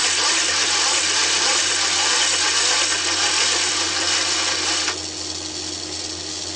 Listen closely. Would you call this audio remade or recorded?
recorded